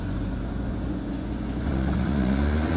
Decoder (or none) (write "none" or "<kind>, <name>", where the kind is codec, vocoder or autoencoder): vocoder, Vocos